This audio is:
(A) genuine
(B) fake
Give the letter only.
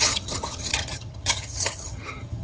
B